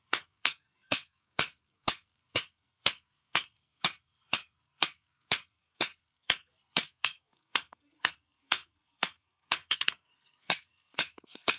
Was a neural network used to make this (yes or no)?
yes